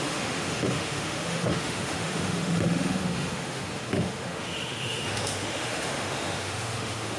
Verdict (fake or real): fake